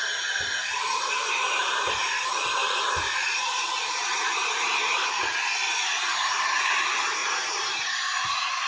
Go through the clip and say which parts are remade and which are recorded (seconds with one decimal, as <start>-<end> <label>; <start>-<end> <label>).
0.0-0.6 recorded; 0.6-1.6 remade; 1.6-2.6 recorded; 2.6-5.1 remade; 5.1-7.2 recorded; 7.2-8.7 remade